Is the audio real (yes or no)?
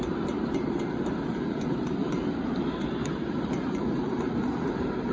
no